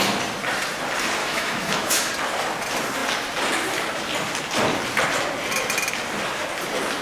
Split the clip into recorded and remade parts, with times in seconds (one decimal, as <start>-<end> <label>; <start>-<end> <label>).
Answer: 0.0-1.2 recorded; 1.2-2.1 remade; 2.1-7.0 recorded